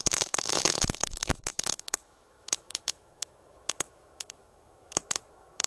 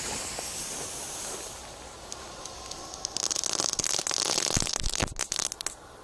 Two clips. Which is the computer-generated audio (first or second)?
first